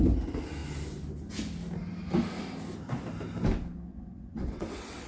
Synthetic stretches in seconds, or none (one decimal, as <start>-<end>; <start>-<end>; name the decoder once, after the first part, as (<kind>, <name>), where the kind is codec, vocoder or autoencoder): 3.9-5.1 (vocoder, WaveNeXt)